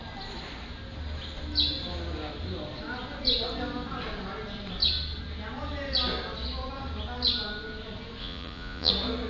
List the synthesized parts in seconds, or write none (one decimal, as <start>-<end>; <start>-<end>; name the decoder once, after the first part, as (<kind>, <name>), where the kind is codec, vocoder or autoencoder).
8.2-8.9 (vocoder, Vocos)